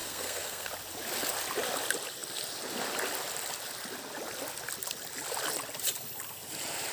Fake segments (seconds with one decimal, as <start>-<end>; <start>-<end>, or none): 0.0-0.7